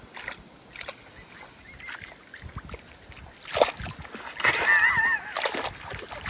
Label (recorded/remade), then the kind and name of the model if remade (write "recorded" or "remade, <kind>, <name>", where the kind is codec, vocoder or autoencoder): recorded